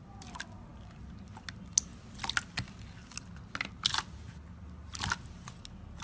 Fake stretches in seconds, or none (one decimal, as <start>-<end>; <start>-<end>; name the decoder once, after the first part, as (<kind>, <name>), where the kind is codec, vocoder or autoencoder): none